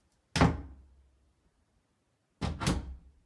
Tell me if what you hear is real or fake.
real